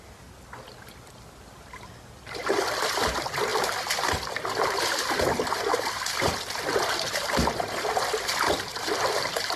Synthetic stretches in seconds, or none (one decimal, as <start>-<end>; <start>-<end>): none